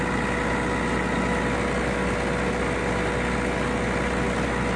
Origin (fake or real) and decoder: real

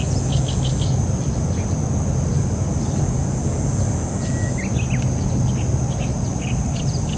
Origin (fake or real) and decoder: real